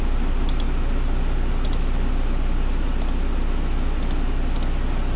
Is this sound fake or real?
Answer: real